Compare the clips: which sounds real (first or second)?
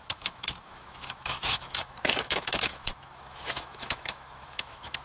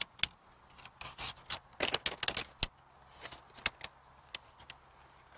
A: second